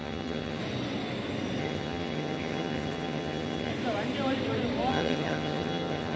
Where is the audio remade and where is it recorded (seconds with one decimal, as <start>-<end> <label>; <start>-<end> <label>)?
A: 0.0-0.6 remade; 0.6-1.6 recorded; 1.6-3.7 remade; 3.7-4.9 recorded; 4.9-6.2 remade